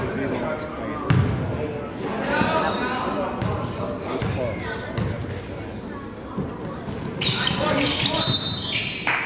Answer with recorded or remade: recorded